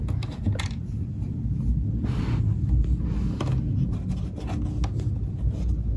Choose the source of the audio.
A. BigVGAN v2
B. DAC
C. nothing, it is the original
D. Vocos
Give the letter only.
C